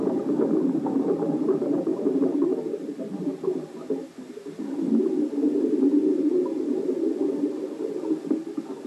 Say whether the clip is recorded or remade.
recorded